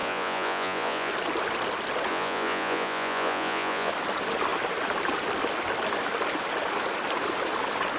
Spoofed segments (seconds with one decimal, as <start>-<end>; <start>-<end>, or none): 0.0-1.1; 2.1-3.9